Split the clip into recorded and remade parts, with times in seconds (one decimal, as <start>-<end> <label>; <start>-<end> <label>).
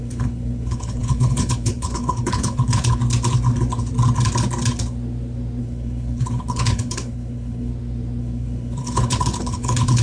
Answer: 0.0-3.0 remade; 3.0-5.6 recorded; 5.6-7.7 remade; 7.7-8.2 recorded; 8.2-10.0 remade